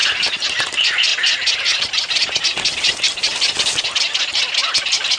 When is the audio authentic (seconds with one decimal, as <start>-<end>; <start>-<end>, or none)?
0.0-5.2